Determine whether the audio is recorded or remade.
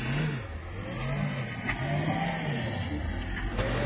recorded